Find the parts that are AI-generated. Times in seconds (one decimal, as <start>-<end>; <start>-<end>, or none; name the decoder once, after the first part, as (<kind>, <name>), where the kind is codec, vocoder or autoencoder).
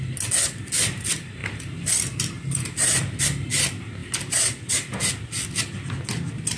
1.4-3.2 (vocoder, BigVGAN v2); 4.0-4.7